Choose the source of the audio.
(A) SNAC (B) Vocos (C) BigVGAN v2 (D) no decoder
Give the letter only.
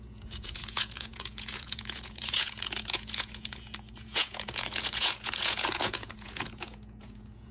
B